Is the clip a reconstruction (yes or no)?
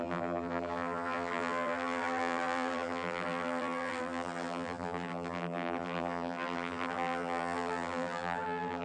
yes